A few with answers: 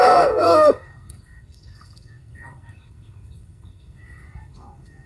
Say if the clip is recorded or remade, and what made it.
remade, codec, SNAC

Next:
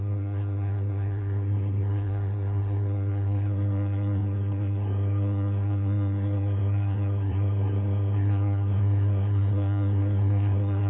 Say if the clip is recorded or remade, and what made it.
remade, codec, SNAC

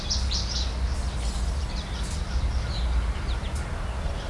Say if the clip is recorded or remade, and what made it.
recorded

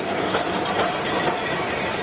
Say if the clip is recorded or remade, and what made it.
recorded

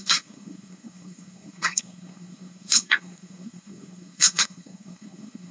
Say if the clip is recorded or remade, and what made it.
remade, codec, SNAC